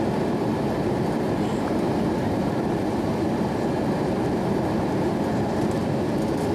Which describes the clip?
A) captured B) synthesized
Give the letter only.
A